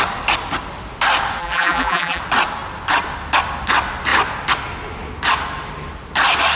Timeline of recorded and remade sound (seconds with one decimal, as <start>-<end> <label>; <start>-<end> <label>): 0.0-1.4 recorded; 1.4-2.2 remade; 2.2-6.6 recorded